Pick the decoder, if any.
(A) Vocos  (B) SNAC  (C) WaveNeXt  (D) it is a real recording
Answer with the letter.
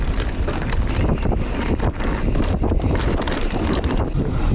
D